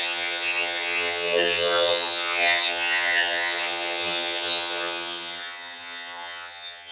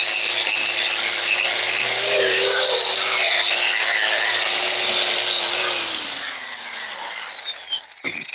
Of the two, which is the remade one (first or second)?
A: first